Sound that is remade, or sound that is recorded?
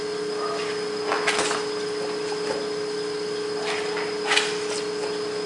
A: recorded